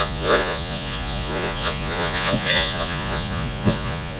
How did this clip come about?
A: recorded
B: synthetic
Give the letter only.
B